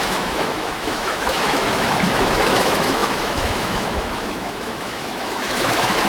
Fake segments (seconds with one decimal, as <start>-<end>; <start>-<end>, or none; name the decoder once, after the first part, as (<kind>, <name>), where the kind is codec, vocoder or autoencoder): 0.0-6.1 (autoencoder, DAC-VAE)